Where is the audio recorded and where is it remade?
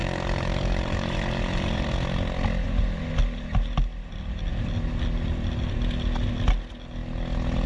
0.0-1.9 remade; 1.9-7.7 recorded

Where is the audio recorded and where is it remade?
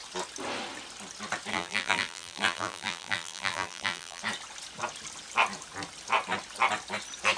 0.0-1.5 recorded; 1.5-4.2 remade; 4.2-7.4 recorded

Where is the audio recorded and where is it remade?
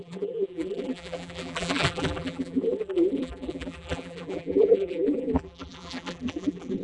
0.0-6.8 remade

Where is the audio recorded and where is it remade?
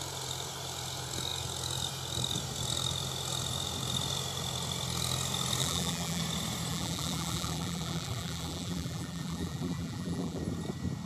0.0-5.6 recorded; 5.6-6.2 remade; 6.2-6.7 recorded; 6.7-10.4 remade; 10.4-11.1 recorded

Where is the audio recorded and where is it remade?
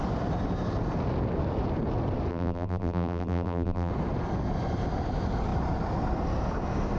0.0-2.3 recorded; 2.3-3.9 remade; 3.9-7.0 recorded